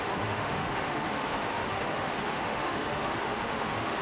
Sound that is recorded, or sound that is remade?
remade